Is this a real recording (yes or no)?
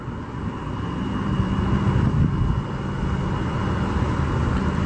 yes